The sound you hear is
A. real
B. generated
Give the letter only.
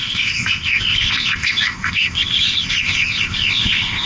B